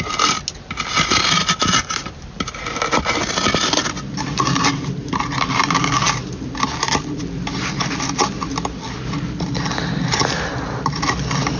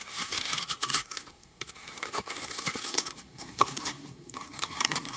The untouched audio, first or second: first